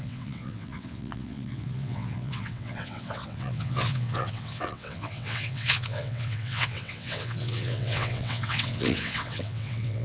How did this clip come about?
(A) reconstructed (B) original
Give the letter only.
A